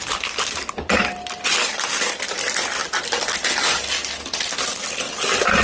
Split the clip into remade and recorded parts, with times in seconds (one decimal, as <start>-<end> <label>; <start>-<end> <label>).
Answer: 0.0-2.8 remade; 2.8-4.3 recorded; 4.3-5.6 remade